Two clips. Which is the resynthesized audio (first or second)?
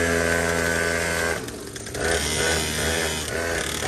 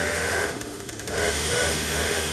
second